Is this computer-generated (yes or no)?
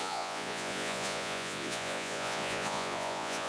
yes